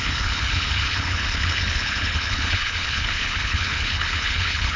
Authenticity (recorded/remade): remade